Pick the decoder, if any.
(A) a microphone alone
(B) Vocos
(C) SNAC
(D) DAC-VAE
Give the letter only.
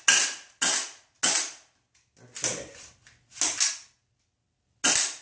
A